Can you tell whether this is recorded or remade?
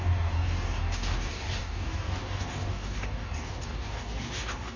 remade